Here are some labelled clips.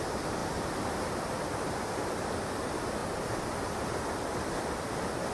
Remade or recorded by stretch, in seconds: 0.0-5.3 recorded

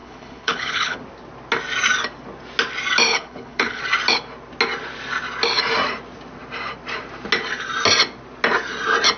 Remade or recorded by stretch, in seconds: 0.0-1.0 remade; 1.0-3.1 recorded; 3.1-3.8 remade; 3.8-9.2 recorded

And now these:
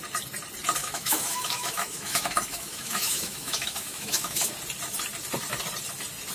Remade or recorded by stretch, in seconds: 0.0-0.8 recorded; 0.8-4.5 remade; 4.5-6.3 recorded

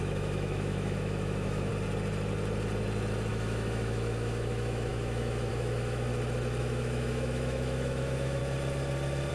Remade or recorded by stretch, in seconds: 0.0-1.7 remade; 1.7-3.3 recorded; 3.3-6.1 remade; 6.1-6.6 recorded; 6.6-8.4 remade; 8.4-9.3 recorded